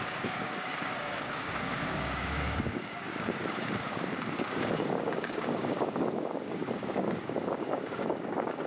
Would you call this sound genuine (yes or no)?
no